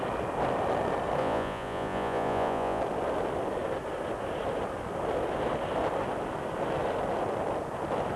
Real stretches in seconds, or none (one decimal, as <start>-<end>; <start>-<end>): 0.0-1.2; 2.8-8.2